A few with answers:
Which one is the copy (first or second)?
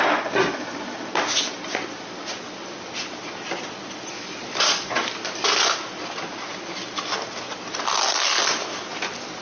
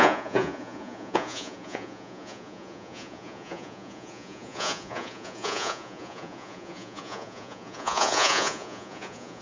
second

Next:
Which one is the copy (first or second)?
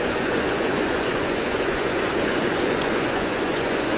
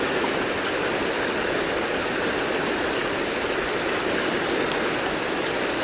first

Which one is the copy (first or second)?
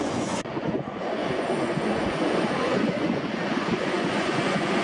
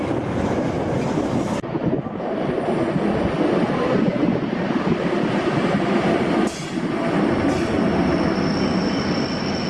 first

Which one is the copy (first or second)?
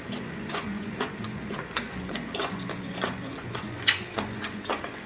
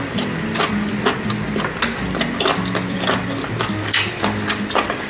first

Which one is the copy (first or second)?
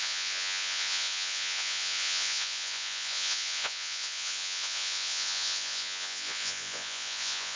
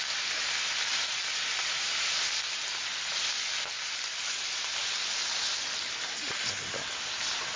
first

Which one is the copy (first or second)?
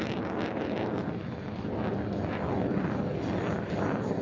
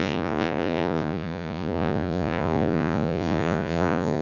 second